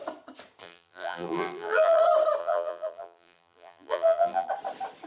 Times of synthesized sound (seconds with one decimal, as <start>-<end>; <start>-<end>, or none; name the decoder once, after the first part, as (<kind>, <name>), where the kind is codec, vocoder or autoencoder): 0.6-2.0 (vocoder, BigVGAN v2); 2.4-4.5